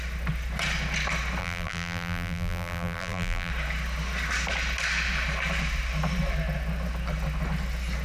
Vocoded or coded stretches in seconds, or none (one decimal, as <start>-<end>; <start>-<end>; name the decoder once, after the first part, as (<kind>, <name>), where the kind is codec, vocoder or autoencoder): 1.4-3.5 (vocoder, BigVGAN v2)